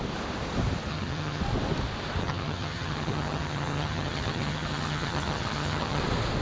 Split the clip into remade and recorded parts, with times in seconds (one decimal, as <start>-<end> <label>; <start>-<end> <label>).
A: 0.0-0.9 recorded; 0.9-1.4 remade; 1.4-2.2 recorded; 2.2-6.0 remade; 6.0-6.4 recorded